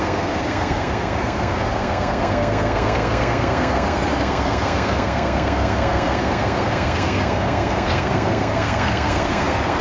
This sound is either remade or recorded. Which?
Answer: remade